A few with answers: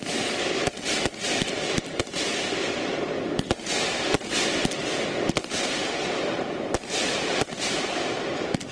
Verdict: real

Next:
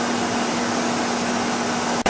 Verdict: real